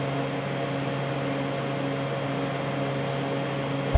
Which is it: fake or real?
real